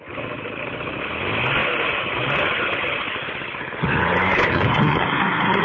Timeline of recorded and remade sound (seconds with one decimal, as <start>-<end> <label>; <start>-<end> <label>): 0.0-4.5 recorded; 4.5-5.6 remade